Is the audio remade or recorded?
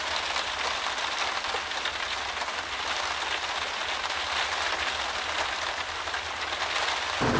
recorded